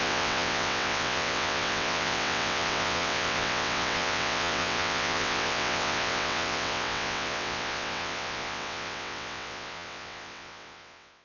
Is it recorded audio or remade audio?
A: remade